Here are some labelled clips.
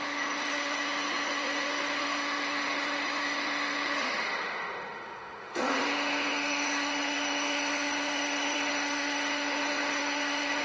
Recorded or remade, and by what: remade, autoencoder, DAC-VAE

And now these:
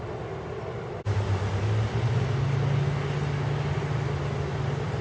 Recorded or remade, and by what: recorded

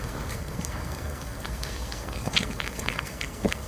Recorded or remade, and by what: remade, codec, SNAC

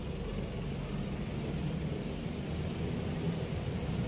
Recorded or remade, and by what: recorded